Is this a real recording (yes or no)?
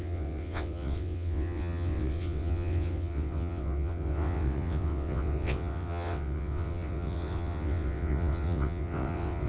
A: no